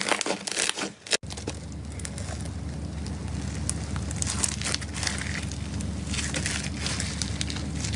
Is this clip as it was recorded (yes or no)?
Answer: yes